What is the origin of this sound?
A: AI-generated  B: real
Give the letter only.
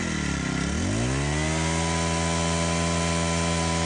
B